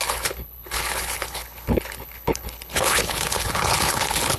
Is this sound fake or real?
fake